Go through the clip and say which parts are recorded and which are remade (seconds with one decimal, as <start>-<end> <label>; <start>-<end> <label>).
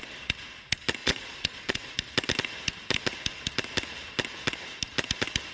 0.0-1.0 recorded; 1.0-1.9 remade; 1.9-5.5 recorded